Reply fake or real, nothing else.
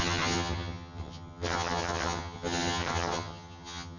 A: fake